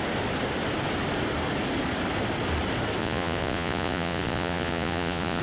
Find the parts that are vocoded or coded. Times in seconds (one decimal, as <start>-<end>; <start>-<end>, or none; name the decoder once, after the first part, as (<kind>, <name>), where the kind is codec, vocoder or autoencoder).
3.0-5.4 (vocoder, Vocos)